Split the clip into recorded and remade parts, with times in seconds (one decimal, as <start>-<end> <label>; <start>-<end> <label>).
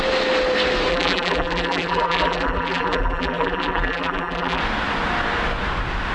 0.0-0.9 recorded; 0.9-4.6 remade; 4.6-6.1 recorded